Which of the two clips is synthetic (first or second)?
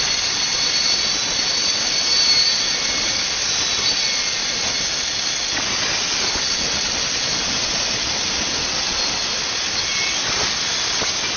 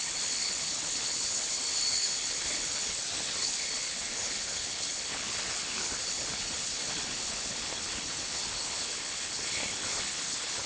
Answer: second